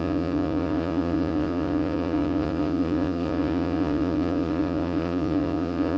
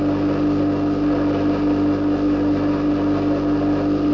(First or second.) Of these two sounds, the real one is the second